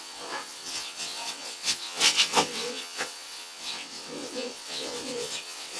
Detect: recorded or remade remade